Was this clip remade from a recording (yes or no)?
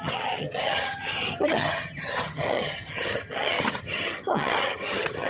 yes